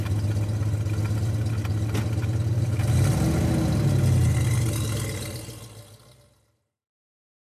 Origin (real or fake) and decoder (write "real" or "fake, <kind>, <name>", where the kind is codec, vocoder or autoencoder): real